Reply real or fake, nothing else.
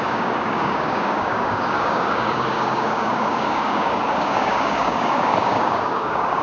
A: fake